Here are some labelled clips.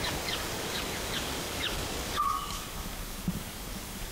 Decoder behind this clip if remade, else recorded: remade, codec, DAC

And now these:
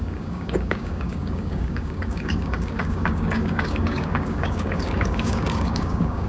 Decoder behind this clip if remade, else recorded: remade, codec, DAC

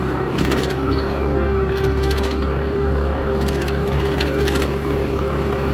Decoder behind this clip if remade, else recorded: remade, codec, DAC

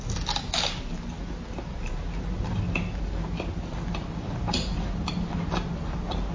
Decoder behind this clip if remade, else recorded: recorded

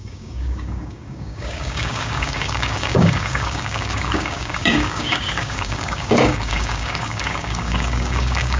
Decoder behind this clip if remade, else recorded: remade, codec, DAC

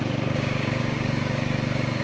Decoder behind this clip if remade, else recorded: remade, codec, DAC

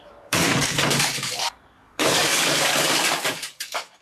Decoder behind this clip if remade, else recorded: remade, codec, DAC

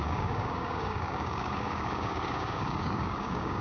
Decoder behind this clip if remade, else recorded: remade, codec, DAC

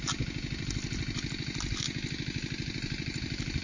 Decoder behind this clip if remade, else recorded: recorded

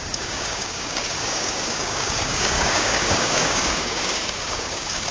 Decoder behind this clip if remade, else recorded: remade, codec, DAC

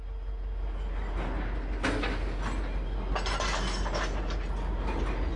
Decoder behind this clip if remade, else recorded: recorded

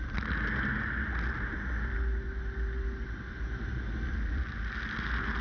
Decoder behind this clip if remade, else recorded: recorded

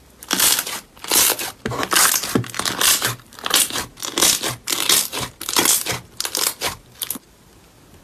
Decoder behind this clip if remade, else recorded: recorded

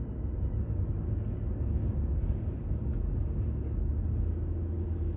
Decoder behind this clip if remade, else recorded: recorded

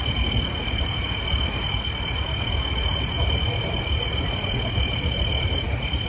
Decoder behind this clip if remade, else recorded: recorded